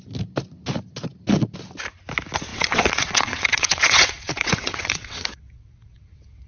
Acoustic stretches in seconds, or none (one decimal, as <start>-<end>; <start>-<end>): 0.0-2.5